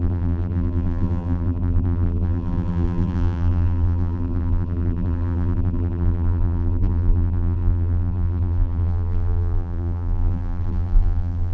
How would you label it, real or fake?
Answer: fake